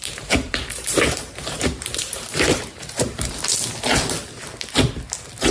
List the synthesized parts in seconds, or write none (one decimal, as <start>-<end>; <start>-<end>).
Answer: 0.0-3.3